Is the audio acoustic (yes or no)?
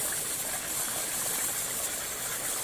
no